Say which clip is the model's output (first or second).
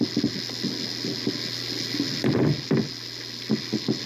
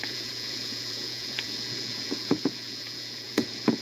second